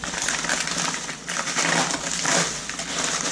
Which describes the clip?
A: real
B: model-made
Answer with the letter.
A